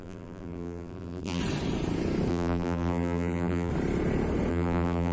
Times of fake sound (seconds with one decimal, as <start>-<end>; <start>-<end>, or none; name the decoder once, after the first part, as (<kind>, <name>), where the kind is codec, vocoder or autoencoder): 0.0-1.4 (vocoder, BigVGAN v2); 2.3-3.7; 4.5-5.1